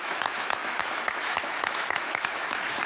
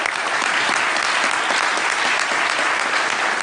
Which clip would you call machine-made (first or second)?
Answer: first